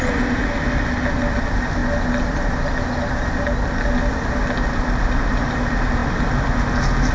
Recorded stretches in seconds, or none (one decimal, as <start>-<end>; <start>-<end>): 0.0-7.1